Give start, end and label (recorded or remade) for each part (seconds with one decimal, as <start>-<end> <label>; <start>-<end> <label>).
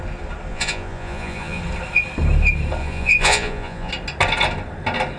0.0-0.5 recorded; 0.5-1.6 remade; 1.6-2.8 recorded; 2.8-3.9 remade; 3.9-5.2 recorded